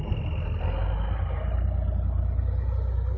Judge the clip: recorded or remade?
recorded